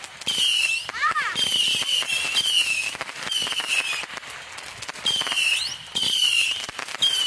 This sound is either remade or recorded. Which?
remade